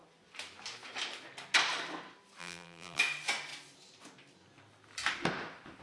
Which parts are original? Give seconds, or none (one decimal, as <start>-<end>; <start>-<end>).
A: 0.0-2.4; 3.0-5.8